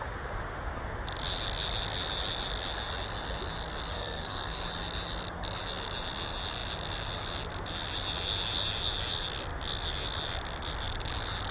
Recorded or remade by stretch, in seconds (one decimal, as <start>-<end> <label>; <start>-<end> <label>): 0.0-3.9 recorded; 3.9-4.6 remade; 4.6-11.5 recorded